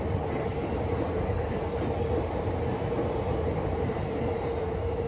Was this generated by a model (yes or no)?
no